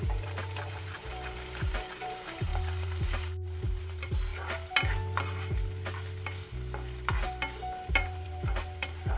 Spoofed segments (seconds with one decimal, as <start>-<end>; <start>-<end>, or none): 0.0-4.3; 7.9-9.2